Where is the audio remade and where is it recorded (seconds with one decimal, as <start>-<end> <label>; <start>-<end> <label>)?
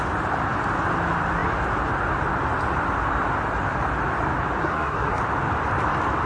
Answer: 0.0-4.6 recorded; 4.6-5.2 remade; 5.2-6.3 recorded